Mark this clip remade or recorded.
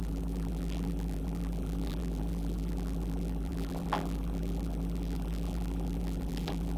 remade